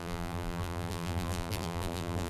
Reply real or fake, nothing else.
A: fake